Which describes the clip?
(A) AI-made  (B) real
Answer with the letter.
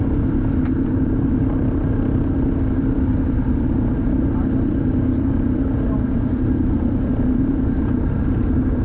A